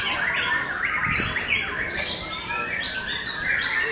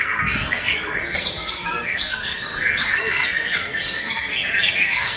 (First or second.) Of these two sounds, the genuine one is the first